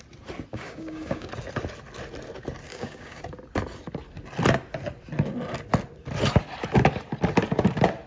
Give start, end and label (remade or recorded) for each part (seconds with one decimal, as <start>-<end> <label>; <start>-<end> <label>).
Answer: 0.0-0.5 recorded; 0.5-1.3 remade; 1.3-2.7 recorded; 2.7-3.2 remade; 3.2-8.1 recorded